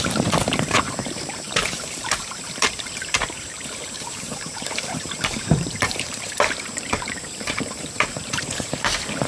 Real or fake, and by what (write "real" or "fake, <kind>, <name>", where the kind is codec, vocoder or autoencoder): fake, vocoder, BigVGAN v2